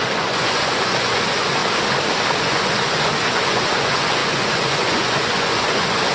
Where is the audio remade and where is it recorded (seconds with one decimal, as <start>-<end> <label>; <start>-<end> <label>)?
0.0-1.6 remade; 1.6-2.4 recorded; 2.4-6.1 remade